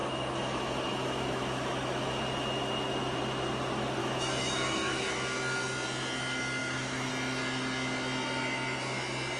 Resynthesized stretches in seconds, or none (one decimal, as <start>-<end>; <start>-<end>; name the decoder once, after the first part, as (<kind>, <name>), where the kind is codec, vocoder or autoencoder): 0.0-2.2 (autoencoder, DAC-VAE); 4.0-5.1; 6.6-7.1